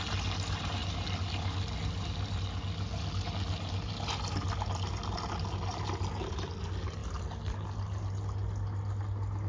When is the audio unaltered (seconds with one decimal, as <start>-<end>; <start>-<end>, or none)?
0.0-5.7; 6.6-9.5